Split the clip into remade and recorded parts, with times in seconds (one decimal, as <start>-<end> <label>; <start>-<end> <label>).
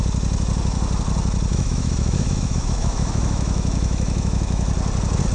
0.0-1.5 recorded; 1.5-4.7 remade; 4.7-5.3 recorded